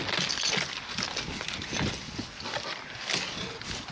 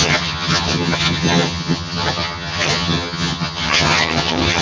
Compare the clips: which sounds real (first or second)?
first